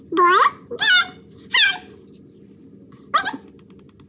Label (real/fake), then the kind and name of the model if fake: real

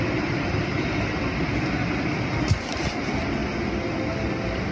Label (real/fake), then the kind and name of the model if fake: real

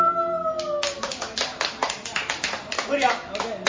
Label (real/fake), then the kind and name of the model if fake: real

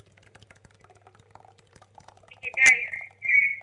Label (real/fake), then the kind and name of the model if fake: fake, vocoder, BigVGAN v2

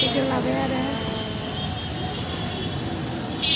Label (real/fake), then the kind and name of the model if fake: real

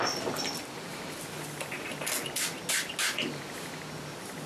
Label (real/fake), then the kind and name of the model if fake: real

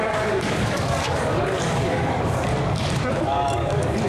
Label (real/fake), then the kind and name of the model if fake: fake, codec, DAC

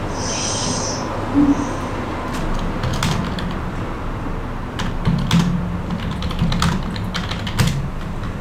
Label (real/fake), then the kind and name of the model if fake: real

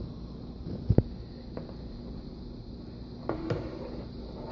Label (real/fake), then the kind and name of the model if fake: real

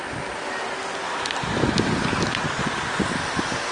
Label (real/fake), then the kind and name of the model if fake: real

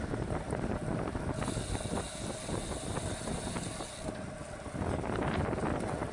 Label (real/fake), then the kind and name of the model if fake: real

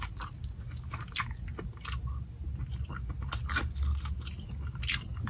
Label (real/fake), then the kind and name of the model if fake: real